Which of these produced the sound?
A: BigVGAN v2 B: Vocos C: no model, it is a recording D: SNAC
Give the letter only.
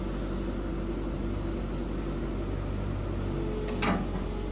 C